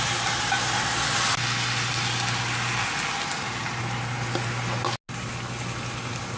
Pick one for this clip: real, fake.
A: real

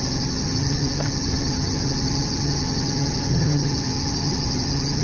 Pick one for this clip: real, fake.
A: fake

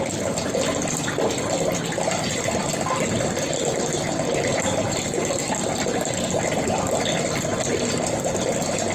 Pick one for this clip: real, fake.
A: real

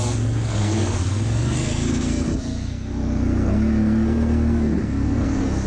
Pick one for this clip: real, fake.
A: fake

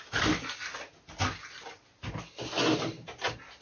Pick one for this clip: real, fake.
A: real